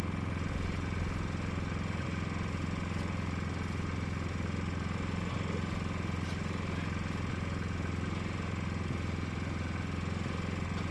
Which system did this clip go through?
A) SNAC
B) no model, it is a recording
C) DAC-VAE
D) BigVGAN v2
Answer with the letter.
B